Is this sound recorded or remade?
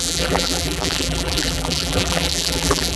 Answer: remade